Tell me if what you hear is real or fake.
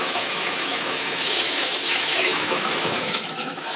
fake